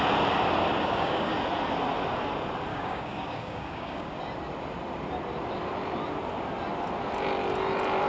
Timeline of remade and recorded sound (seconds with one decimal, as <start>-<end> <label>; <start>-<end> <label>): 0.0-0.8 recorded; 0.8-1.3 remade; 1.3-2.7 recorded; 2.7-4.2 remade; 4.2-8.1 recorded